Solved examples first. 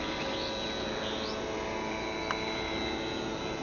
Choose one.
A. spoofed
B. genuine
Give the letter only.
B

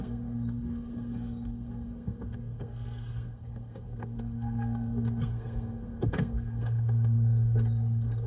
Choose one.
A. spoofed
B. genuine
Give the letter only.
A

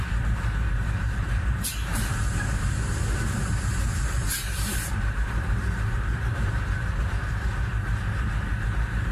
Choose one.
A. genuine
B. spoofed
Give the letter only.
B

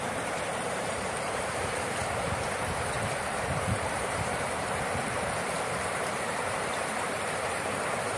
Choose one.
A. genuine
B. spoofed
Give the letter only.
B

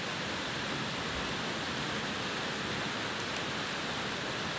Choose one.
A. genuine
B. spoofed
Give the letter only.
A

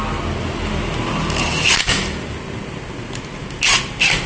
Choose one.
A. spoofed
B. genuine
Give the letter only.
B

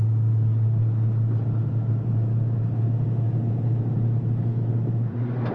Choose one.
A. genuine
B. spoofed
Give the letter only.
A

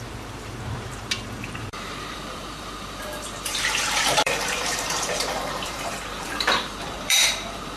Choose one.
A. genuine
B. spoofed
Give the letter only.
B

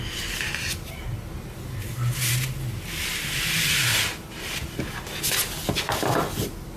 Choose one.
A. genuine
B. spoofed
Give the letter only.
A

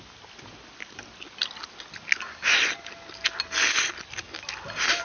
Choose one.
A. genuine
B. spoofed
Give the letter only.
A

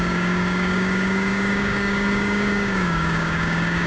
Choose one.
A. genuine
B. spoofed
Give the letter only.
B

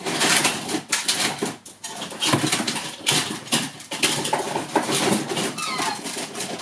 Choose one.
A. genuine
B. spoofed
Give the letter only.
A